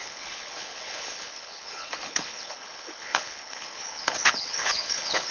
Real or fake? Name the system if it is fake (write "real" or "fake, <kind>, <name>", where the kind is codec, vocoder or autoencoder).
fake, codec, HILCodec